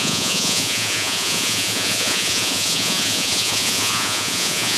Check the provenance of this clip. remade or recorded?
remade